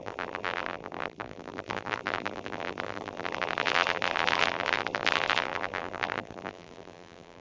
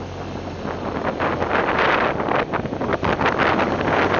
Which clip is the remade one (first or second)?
first